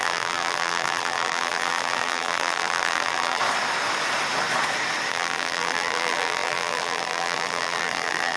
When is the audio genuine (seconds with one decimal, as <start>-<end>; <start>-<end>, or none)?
3.4-5.1